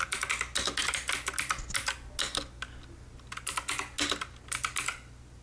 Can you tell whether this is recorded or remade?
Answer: recorded